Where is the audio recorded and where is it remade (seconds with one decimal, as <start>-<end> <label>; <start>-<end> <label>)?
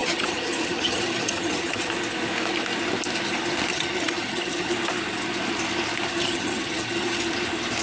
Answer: 0.0-1.9 remade; 1.9-3.7 recorded; 3.7-4.7 remade; 4.7-6.1 recorded; 6.1-7.2 remade; 7.2-7.8 recorded